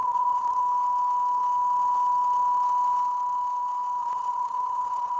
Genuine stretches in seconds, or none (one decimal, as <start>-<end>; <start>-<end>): 0.6-4.0